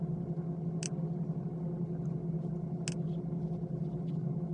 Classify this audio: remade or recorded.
recorded